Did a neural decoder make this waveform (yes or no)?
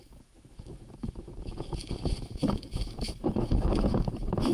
yes